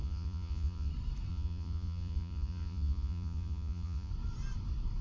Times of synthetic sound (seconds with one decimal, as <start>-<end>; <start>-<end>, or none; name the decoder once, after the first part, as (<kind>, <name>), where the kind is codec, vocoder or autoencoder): 0.0-0.9 (vocoder, Vocos); 1.3-4.1